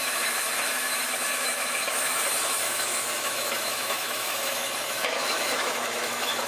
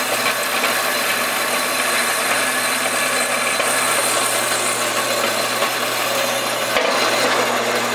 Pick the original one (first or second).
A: second